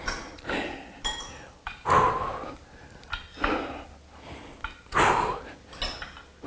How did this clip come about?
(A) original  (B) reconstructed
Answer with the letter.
A